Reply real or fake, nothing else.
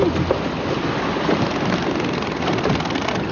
real